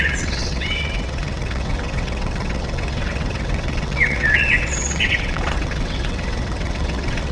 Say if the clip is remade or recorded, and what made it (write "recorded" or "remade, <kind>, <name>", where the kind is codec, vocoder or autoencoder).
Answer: remade, vocoder, WaveNeXt